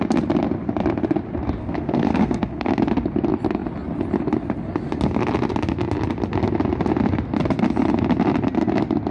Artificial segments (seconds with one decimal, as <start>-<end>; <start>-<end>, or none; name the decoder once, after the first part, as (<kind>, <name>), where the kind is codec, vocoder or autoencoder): 1.6-2.7 (codec, SNAC)